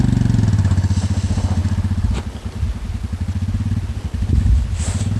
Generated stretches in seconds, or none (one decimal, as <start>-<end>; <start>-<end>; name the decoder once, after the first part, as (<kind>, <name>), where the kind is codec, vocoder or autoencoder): none